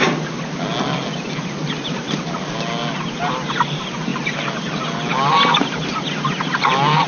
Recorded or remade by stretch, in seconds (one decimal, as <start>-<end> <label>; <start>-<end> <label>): 0.0-7.1 recorded